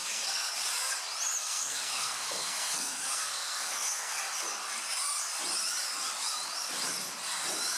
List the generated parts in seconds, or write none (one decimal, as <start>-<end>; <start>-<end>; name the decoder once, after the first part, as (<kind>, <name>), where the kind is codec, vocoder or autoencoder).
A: 0.0-0.5 (codec, SNAC); 1.4-4.2